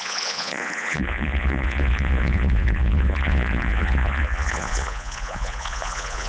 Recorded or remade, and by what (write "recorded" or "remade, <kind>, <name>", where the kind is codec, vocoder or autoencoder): remade, vocoder, Vocos